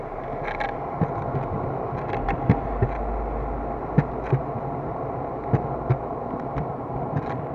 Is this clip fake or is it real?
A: real